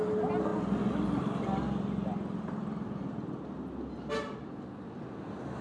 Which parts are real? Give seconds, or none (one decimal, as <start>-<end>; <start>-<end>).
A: 0.0-5.6